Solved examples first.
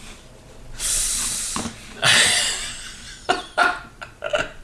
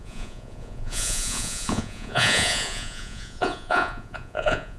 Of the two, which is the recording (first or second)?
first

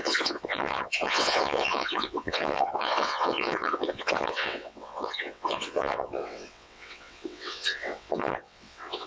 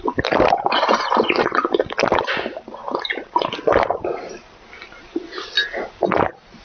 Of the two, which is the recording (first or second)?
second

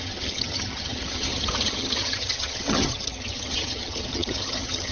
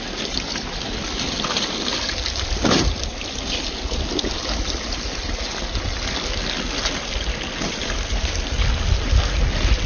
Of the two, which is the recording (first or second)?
second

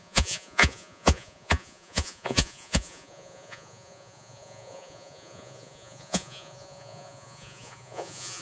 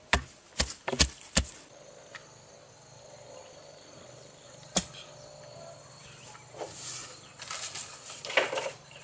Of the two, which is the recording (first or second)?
second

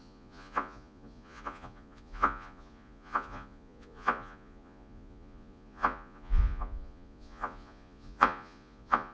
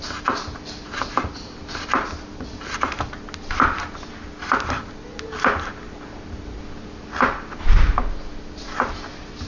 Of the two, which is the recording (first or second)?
second